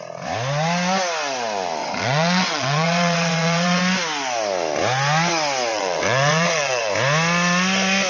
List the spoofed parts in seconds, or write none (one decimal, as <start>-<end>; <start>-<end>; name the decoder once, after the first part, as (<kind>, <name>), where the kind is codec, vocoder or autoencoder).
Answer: 1.8-3.8 (vocoder, WaveNeXt); 5.7-6.9

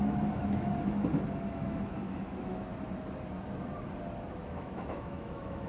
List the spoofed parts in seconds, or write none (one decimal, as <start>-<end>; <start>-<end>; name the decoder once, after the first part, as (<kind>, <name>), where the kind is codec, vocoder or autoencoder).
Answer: 0.0-0.7 (autoencoder, DAC-VAE); 1.5-2.7; 4.3-5.7